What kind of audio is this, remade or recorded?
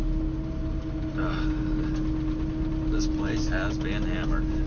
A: recorded